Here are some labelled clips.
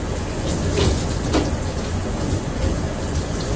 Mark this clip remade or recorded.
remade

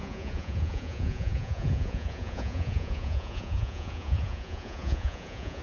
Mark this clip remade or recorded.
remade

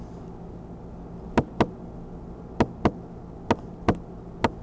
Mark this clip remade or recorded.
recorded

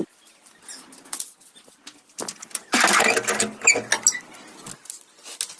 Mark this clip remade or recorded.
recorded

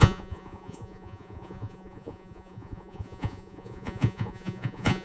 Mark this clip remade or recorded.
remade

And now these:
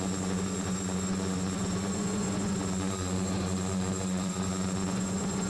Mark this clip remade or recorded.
remade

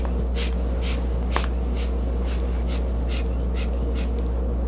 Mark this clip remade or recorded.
recorded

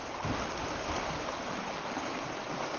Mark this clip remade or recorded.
recorded